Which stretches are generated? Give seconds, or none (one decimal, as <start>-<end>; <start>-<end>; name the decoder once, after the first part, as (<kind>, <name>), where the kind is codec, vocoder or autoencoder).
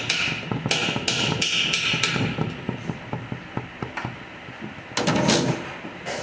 none